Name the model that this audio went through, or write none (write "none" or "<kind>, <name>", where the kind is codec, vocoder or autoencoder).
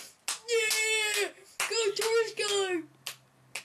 none